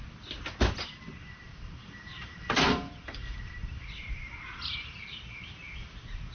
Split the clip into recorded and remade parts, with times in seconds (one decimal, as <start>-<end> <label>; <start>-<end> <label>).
0.0-1.2 recorded; 1.2-5.0 remade; 5.0-6.3 recorded